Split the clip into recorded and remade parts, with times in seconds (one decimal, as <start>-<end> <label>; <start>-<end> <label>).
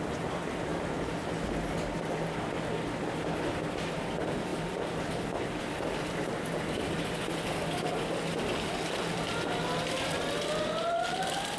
0.0-11.6 recorded